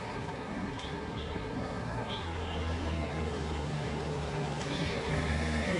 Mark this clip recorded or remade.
remade